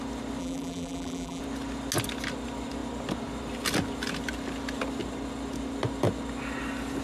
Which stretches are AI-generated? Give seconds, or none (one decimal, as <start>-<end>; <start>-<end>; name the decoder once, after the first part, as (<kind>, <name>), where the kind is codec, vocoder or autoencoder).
0.4-1.4 (vocoder, BigVGAN v2)